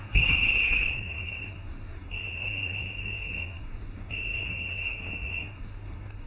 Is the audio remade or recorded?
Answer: remade